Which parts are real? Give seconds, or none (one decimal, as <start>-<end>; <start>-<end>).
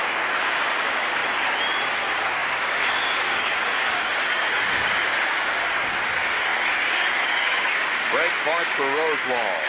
1.2-1.9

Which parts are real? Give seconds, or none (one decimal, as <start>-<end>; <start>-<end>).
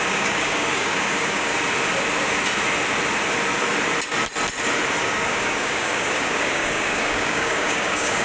1.5-5.0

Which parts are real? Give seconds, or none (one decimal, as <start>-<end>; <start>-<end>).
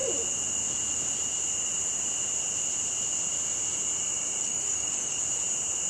0.0-4.4; 5.2-5.9